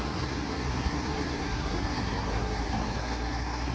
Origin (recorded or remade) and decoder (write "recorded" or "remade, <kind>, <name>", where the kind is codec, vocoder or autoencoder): remade, codec, SNAC